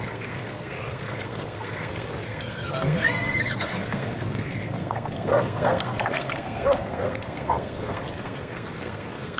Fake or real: fake